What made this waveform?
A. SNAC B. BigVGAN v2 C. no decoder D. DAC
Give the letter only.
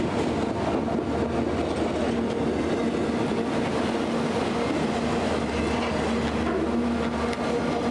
C